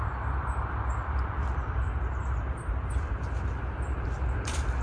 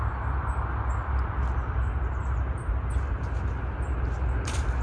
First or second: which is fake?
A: first